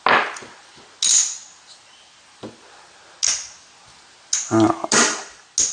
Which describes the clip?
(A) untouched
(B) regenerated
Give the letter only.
A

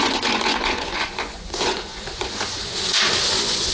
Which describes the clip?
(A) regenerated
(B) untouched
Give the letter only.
A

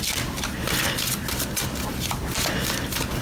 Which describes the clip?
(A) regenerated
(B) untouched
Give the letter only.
B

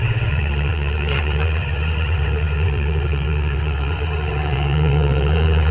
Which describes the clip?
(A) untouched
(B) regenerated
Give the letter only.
B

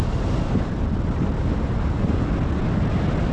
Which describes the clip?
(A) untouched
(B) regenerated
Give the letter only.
A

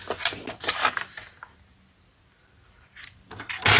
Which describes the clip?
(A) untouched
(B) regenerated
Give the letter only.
A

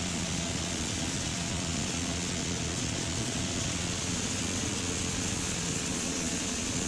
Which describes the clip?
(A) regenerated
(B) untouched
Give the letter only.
A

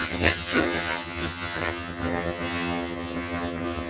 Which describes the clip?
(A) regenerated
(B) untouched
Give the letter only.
A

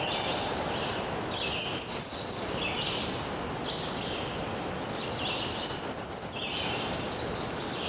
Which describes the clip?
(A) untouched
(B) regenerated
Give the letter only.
A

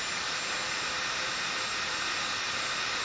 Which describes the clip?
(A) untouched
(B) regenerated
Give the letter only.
A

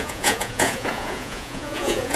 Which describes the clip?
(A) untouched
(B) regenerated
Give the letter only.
B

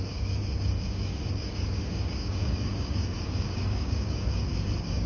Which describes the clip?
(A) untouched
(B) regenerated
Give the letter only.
B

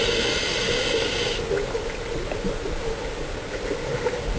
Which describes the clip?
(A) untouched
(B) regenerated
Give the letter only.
A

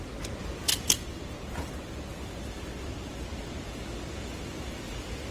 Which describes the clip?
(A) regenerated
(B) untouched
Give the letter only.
B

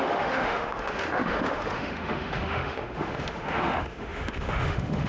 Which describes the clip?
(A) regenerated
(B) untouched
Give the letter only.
A